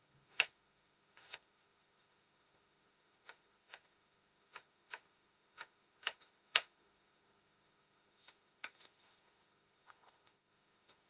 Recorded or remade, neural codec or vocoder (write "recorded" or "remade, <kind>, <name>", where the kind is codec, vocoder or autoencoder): remade, autoencoder, DAC-VAE